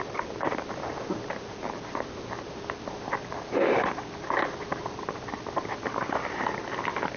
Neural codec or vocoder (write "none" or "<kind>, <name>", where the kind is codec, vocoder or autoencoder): none